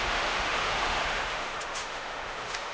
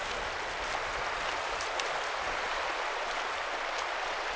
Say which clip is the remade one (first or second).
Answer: first